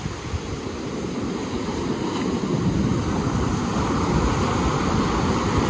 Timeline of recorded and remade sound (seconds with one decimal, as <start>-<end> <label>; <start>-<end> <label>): 0.0-5.7 recorded